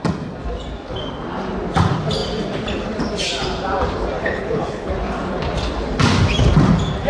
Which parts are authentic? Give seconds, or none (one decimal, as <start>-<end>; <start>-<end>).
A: 0.0-4.2; 4.9-7.1